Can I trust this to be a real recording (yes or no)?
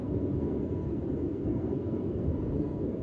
no